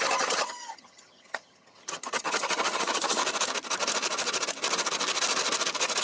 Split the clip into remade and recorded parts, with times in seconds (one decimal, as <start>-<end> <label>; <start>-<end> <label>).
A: 0.0-3.2 remade; 3.2-6.0 recorded